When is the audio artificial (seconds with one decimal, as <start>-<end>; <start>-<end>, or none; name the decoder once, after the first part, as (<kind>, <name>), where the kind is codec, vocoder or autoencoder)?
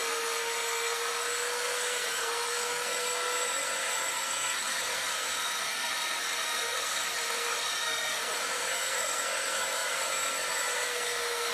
0.0-11.5 (codec, SNAC)